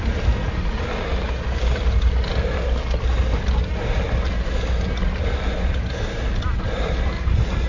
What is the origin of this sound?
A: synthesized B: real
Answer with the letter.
B